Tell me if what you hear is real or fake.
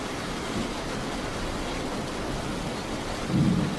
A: real